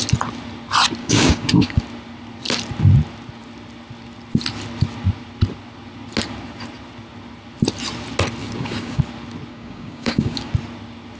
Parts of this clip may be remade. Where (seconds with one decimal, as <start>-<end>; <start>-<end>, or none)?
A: 1.0-1.8; 8.4-9.0; 9.5-10.5